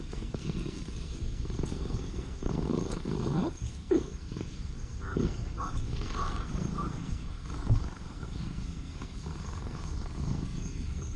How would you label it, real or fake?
fake